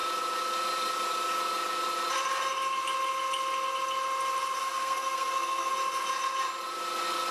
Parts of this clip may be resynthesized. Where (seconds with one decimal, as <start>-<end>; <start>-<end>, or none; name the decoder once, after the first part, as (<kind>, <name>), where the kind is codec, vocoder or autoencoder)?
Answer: 4.6-5.7 (codec, SNAC)